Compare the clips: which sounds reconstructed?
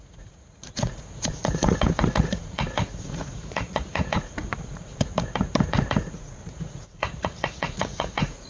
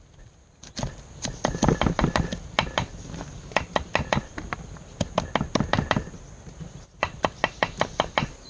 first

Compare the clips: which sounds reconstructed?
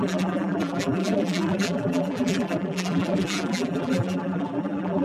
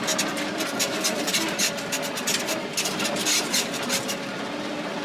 first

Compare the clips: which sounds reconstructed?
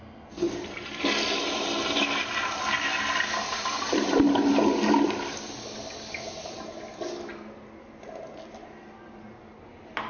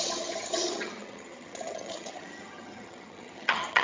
second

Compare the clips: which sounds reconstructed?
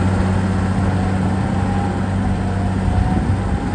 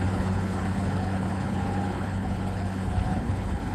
second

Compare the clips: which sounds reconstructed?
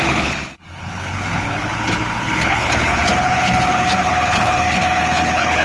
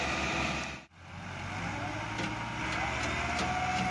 first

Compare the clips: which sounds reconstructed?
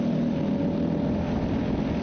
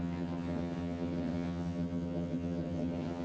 second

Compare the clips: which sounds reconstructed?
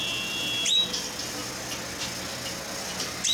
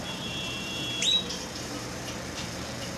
second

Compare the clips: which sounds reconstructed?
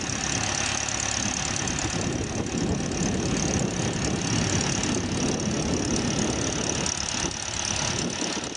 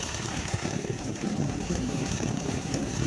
second